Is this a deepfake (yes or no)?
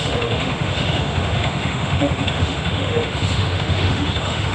yes